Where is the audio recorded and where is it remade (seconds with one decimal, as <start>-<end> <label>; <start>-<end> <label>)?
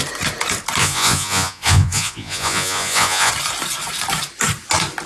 0.0-0.8 recorded; 0.8-3.3 remade; 3.3-5.1 recorded